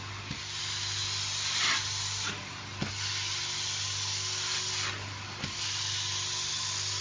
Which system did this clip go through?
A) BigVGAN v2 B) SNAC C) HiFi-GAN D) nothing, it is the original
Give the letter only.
D